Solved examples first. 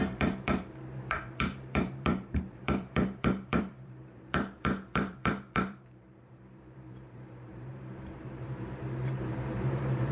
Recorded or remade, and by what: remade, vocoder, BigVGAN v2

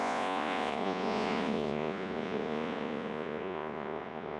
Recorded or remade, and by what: remade, vocoder, Vocos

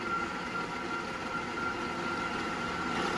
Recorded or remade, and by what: recorded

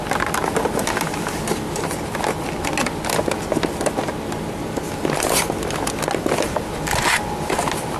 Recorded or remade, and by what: recorded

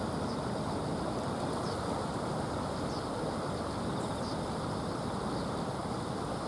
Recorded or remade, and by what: recorded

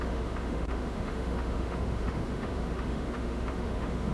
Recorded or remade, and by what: remade, autoencoder, DAC-VAE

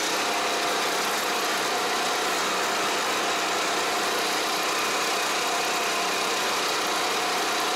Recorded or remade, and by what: recorded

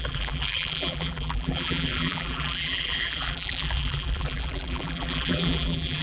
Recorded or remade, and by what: remade, vocoder, BigVGAN v2